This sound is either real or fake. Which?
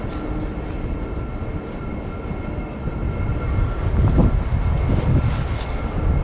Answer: real